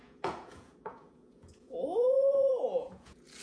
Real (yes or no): no